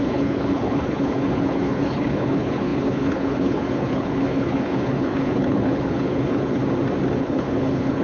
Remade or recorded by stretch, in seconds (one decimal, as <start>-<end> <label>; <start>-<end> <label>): 0.0-6.6 remade; 6.6-7.2 recorded; 7.2-8.0 remade